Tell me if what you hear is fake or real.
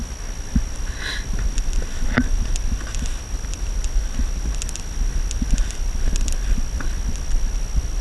real